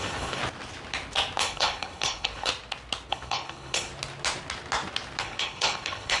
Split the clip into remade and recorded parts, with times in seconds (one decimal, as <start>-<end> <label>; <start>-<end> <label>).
0.0-0.4 remade; 0.4-1.4 recorded; 1.4-2.5 remade; 2.5-3.1 recorded; 3.1-3.9 remade; 3.9-5.2 recorded; 5.2-6.2 remade

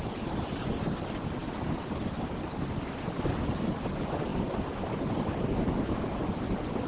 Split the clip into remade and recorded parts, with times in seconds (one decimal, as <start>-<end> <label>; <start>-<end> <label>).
0.0-6.9 recorded

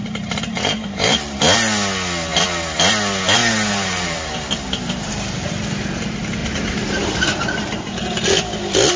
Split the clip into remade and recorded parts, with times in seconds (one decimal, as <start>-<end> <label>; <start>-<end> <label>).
0.0-1.4 remade; 1.4-3.4 recorded; 3.4-5.5 remade; 5.5-6.4 recorded; 6.4-7.9 remade; 7.9-9.0 recorded

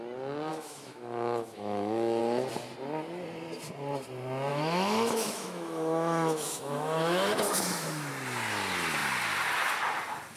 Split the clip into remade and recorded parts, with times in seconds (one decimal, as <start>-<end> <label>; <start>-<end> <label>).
0.0-0.5 recorded; 0.5-2.2 remade; 2.2-4.5 recorded; 4.5-8.1 remade; 8.1-10.4 recorded

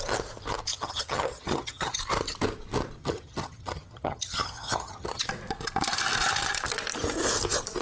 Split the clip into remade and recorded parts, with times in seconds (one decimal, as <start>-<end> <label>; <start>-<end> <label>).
0.0-0.7 recorded; 0.7-2.0 remade; 2.0-3.0 recorded; 3.0-5.3 remade; 5.3-7.8 recorded

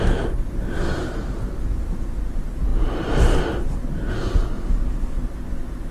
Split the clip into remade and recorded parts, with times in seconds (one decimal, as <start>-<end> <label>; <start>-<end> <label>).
0.0-5.9 recorded